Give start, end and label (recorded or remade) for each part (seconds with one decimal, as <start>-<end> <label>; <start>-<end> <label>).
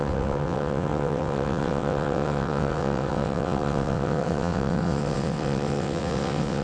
0.0-6.6 remade